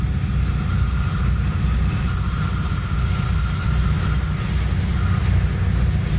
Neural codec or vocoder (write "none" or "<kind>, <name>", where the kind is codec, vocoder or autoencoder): none